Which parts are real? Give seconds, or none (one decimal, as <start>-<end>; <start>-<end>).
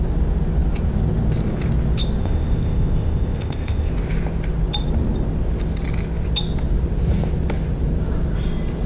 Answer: 0.0-2.2; 3.9-8.9